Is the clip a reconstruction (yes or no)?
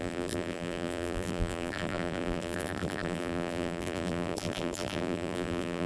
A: yes